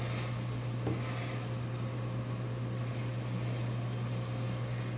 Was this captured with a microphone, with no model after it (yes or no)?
yes